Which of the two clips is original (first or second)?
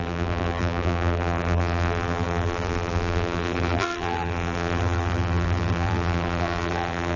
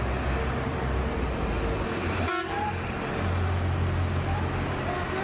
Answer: second